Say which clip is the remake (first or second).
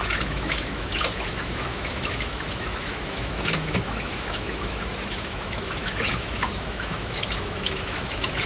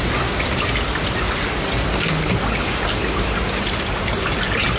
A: first